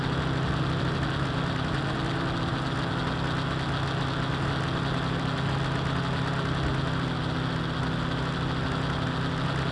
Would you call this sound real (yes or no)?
yes